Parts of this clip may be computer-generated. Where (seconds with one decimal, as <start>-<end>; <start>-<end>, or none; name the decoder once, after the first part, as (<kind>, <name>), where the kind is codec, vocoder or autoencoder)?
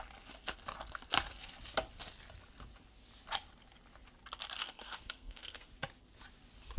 4.6-5.7 (codec, SNAC)